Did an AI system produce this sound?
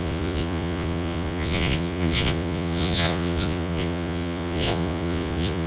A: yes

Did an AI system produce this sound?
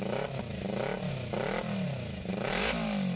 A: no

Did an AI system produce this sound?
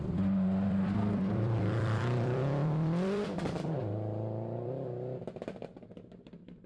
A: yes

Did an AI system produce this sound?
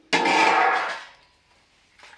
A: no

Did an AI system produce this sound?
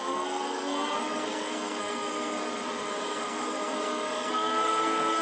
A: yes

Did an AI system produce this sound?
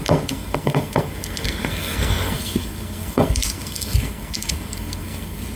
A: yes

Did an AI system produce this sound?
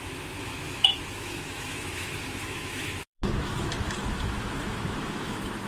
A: yes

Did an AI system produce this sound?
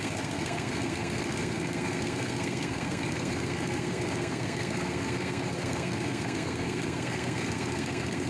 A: yes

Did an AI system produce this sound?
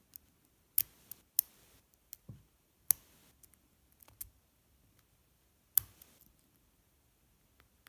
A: no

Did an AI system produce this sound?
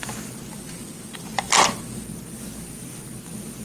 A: no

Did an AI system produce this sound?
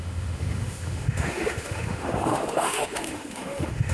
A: yes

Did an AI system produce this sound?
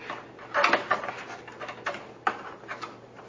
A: no